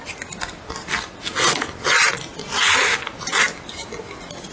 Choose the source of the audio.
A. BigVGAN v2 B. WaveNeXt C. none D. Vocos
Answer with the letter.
C